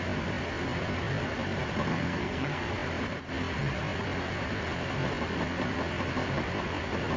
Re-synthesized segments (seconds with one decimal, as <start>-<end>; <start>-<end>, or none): 1.9-2.7